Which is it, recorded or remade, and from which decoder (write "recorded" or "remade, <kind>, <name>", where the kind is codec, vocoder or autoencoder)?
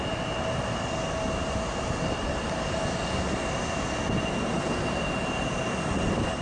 recorded